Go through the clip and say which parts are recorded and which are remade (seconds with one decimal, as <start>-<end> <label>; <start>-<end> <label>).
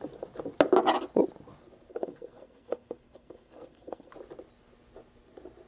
0.0-1.9 recorded; 1.9-4.1 remade; 4.1-5.7 recorded